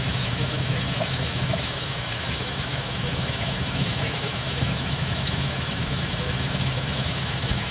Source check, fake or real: fake